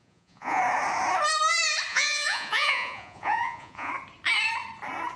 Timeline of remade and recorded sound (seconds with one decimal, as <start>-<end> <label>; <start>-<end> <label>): 0.0-0.6 remade; 0.6-1.9 recorded; 1.9-3.9 remade; 3.9-5.2 recorded